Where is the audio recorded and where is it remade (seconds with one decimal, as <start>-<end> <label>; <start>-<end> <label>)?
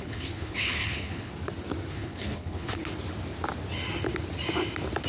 0.0-1.3 remade; 1.3-1.9 recorded; 1.9-2.8 remade; 2.8-5.1 recorded